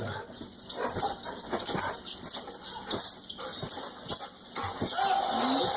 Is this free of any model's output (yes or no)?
yes